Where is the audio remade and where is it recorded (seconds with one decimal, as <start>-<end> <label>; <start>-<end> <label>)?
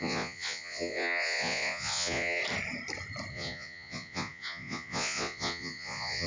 0.0-2.4 remade; 2.4-3.3 recorded; 3.3-6.3 remade